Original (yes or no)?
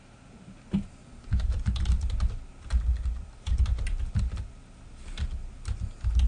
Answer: yes